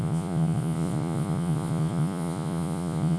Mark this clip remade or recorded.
remade